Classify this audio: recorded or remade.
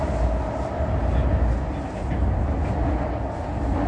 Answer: recorded